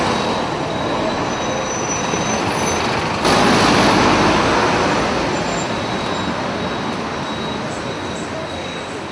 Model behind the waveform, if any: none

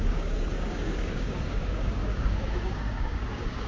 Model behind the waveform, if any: codec, DAC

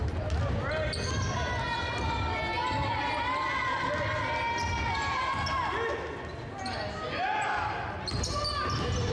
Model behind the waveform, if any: none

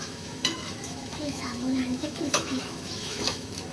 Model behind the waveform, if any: autoencoder, DAC-VAE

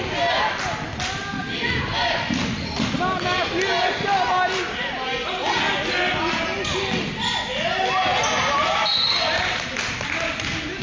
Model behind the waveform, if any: none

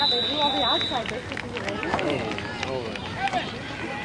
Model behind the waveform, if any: none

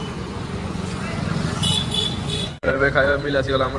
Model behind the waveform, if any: vocoder, Vocos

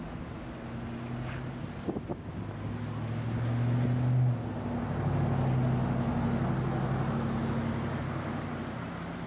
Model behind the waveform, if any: none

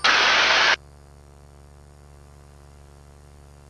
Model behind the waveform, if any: none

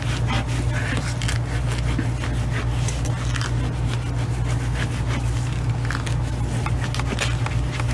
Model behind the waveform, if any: none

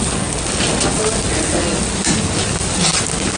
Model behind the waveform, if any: none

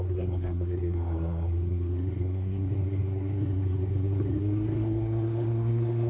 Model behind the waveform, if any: codec, SNAC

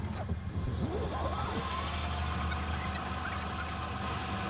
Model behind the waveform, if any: none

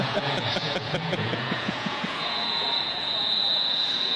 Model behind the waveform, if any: vocoder, Vocos